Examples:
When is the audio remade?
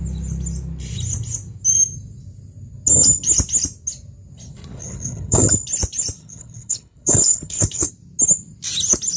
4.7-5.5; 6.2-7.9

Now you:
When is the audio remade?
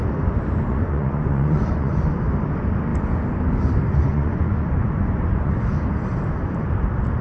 0.7-1.9; 4.1-5.5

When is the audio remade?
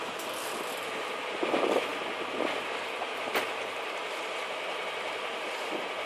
none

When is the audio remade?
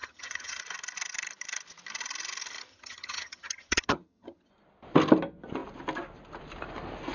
0.0-0.6; 2.7-4.5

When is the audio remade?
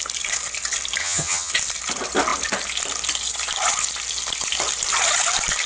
1.0-1.5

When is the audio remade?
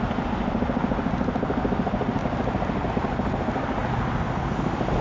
none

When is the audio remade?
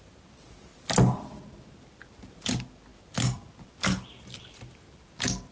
none